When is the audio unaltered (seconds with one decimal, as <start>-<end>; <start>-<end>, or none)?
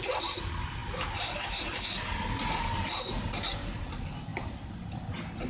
0.0-5.5